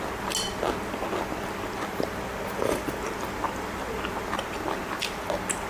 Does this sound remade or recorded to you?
recorded